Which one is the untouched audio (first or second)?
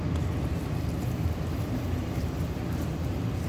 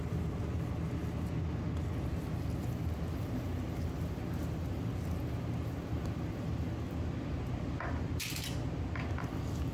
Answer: second